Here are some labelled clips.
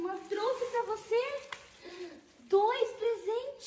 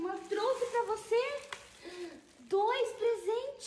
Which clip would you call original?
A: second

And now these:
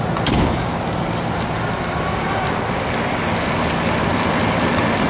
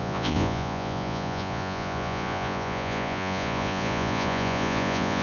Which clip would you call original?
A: first